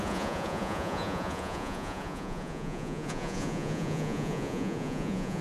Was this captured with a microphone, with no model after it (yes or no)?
no